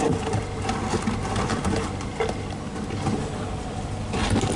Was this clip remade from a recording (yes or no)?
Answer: no